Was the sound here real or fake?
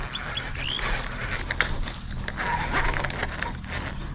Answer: real